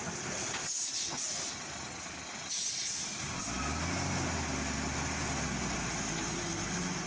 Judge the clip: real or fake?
real